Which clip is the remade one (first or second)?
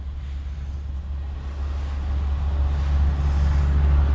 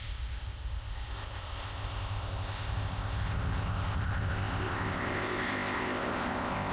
second